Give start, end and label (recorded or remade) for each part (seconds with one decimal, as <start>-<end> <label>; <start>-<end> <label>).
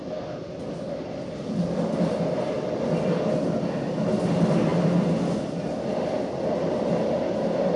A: 0.0-7.8 recorded